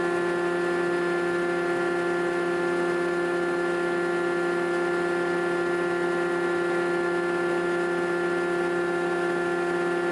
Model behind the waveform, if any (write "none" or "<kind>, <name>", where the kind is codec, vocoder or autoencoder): none